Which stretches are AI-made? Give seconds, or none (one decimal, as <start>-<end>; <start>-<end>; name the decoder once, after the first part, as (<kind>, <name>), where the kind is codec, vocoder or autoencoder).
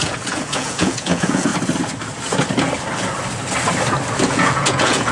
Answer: 0.0-1.5 (vocoder, Vocos); 4.3-5.1